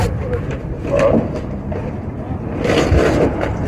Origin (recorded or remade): recorded